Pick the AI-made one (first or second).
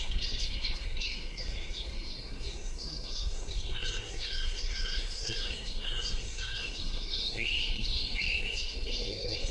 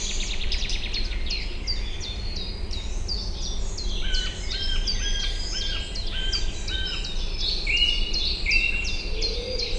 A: first